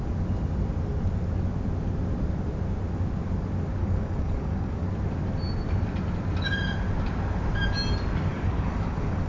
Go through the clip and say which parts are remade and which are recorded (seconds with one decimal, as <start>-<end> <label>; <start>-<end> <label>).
0.0-3.8 recorded; 3.8-4.9 remade; 4.9-8.3 recorded; 8.3-9.3 remade